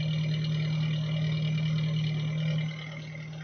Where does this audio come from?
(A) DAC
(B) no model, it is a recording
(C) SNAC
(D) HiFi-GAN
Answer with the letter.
B